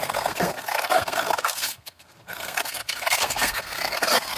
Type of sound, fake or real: fake